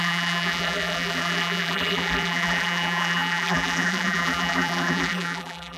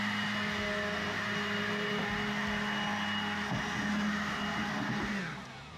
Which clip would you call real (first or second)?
second